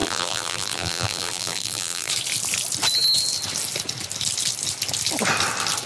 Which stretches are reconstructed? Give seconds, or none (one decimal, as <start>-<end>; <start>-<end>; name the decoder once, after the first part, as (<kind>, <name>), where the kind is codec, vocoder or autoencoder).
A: 0.0-2.1 (vocoder, BigVGAN v2)